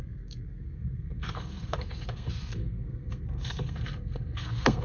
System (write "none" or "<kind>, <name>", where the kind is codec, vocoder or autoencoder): codec, SNAC